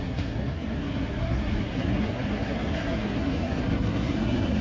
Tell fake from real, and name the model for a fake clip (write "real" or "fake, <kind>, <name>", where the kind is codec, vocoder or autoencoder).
fake, codec, SNAC